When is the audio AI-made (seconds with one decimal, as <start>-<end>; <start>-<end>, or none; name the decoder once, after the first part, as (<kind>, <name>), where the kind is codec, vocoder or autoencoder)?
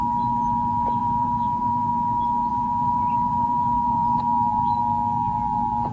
1.0-1.8 (vocoder, BigVGAN v2); 2.5-4.2